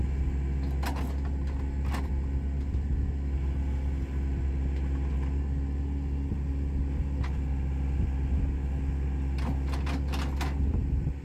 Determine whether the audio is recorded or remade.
recorded